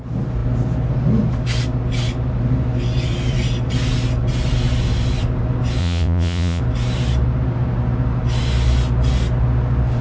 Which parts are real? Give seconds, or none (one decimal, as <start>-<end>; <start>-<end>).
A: 0.0-5.8; 6.6-10.0